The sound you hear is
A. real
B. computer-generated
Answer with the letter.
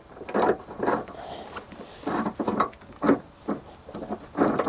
A